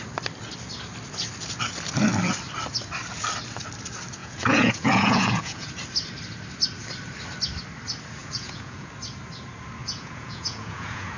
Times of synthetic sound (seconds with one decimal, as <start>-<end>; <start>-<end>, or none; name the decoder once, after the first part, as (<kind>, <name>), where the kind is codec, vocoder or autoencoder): 4.2-5.7 (vocoder, Vocos); 8.2-8.9; 9.8-11.2